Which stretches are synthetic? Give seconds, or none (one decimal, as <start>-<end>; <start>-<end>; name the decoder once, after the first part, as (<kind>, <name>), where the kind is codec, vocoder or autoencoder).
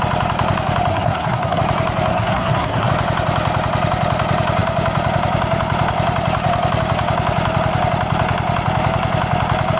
0.9-1.6 (codec, SNAC); 2.1-2.9